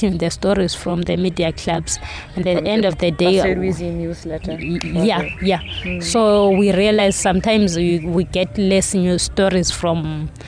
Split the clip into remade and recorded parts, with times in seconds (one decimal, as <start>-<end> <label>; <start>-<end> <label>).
0.0-0.9 recorded; 0.9-2.9 remade; 2.9-10.5 recorded